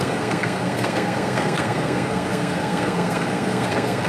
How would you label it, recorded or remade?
remade